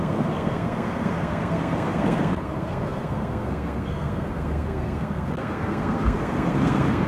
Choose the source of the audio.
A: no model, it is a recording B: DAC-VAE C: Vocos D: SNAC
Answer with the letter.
D